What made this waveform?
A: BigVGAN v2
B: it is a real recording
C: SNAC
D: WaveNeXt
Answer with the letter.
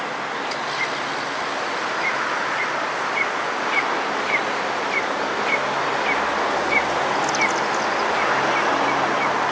B